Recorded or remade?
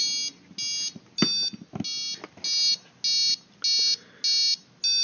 recorded